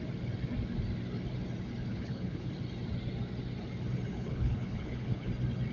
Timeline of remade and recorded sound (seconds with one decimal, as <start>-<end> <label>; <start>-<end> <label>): 0.0-1.9 recorded; 1.9-2.5 remade; 2.5-4.1 recorded; 4.1-5.3 remade; 5.3-5.7 recorded